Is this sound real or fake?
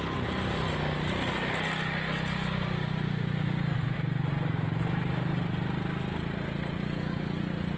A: real